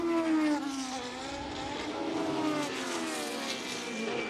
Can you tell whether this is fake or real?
real